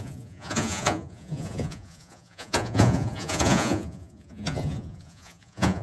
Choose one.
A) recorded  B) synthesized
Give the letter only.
B